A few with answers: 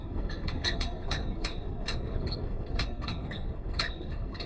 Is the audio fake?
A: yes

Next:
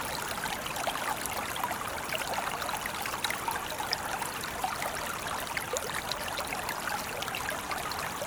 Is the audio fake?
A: yes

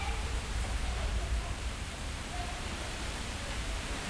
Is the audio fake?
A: yes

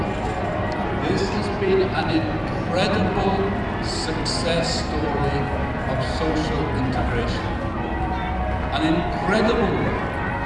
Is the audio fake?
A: yes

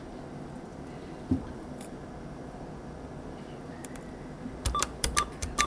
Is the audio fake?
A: yes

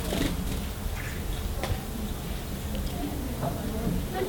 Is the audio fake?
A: no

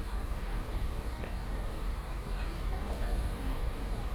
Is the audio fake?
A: yes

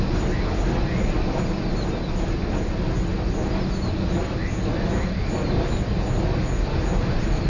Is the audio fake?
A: no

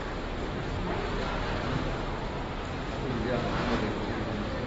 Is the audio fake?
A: no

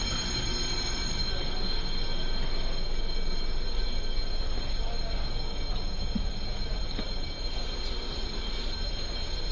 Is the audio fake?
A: no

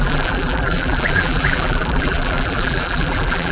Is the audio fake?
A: yes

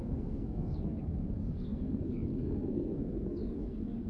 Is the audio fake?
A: yes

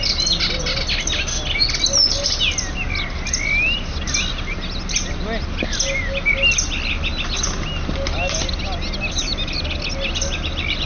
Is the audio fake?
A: no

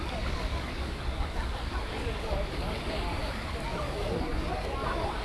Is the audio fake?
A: yes